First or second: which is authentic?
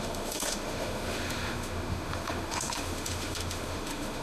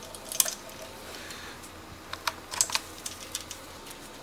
second